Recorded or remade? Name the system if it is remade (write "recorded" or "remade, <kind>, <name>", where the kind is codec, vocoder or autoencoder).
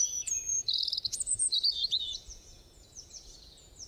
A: remade, vocoder, Vocos